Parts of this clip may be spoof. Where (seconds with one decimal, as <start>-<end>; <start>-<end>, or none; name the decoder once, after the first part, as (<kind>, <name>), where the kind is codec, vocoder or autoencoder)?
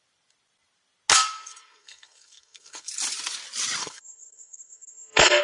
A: 1.1-2.9 (codec, SNAC); 3.8-5.4